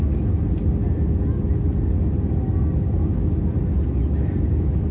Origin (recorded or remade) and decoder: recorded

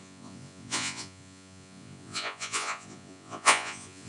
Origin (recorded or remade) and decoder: remade, vocoder, Vocos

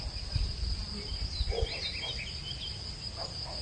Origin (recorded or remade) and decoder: recorded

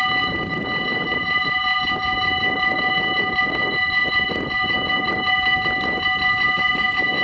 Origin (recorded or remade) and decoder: recorded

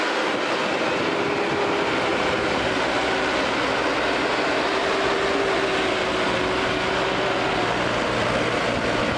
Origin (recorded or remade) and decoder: recorded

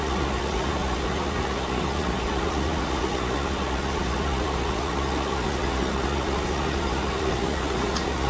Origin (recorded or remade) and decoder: remade, vocoder, Vocos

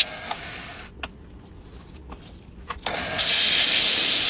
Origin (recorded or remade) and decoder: recorded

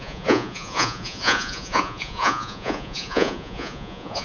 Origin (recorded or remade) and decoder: remade, vocoder, Vocos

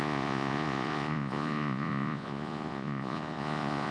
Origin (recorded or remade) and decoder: remade, vocoder, Vocos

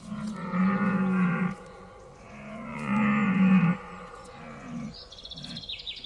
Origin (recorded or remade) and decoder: remade, vocoder, Vocos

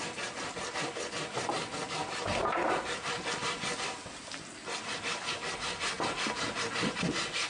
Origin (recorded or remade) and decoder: recorded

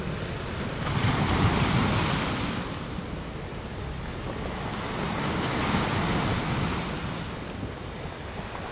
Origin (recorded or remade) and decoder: recorded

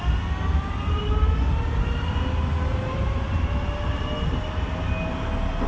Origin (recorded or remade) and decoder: recorded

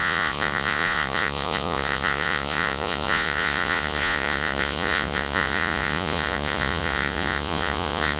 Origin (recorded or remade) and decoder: remade, vocoder, Vocos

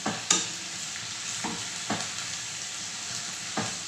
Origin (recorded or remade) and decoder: recorded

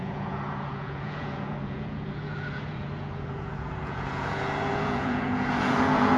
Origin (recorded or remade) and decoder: remade, vocoder, Vocos